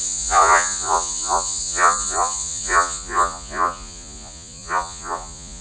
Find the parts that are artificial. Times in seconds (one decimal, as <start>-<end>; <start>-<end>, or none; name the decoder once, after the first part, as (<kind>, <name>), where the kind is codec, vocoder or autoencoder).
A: 0.0-5.6 (vocoder, Vocos)